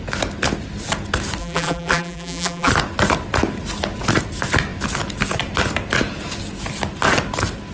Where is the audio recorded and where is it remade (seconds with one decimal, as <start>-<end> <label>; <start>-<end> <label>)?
0.0-1.4 recorded; 1.4-2.7 remade; 2.7-7.7 recorded